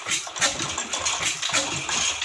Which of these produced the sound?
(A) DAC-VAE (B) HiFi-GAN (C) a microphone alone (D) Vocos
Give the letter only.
C